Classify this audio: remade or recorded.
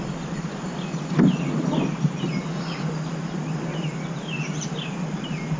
recorded